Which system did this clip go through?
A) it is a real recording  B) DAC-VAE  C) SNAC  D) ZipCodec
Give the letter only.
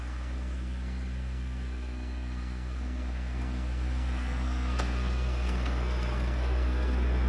C